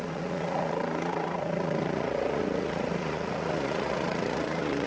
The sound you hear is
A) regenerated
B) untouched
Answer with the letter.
A